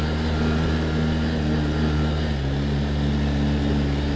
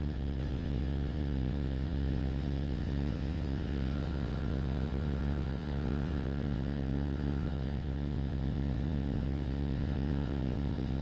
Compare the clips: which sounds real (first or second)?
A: first